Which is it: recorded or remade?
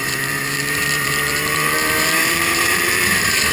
remade